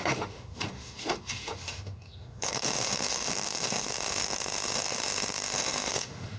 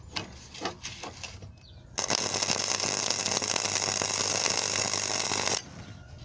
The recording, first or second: second